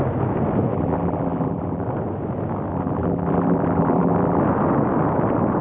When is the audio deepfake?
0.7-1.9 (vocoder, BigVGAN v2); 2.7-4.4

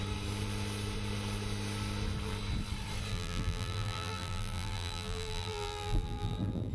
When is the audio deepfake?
3.1-6.7 (vocoder, BigVGAN v2)

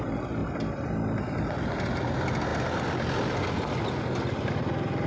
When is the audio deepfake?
none

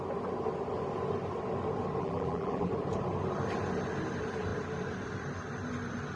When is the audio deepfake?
2.0-2.7 (vocoder, BigVGAN v2)

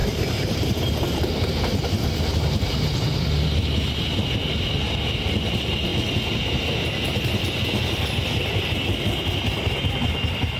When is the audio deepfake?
0.0-4.3 (vocoder, BigVGAN v2)

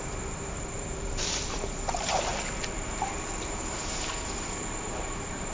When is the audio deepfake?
0.0-5.5 (vocoder, BigVGAN v2)

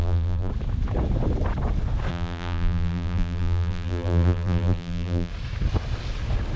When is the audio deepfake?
0.0-0.5 (vocoder, BigVGAN v2); 2.1-5.3